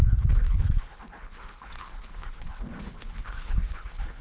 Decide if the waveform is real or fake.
fake